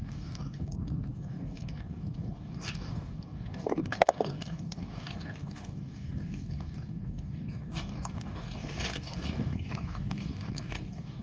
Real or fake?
fake